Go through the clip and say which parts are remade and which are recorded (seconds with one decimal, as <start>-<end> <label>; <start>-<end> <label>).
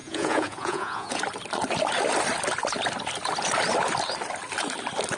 0.0-1.2 remade; 1.2-5.2 recorded